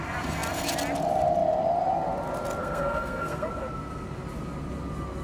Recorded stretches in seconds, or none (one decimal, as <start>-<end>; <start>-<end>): 0.0-2.6; 3.5-5.2